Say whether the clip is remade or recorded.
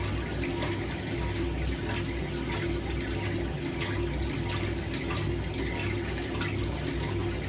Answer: recorded